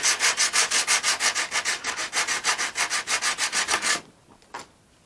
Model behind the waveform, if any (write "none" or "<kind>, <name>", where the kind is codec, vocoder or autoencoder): none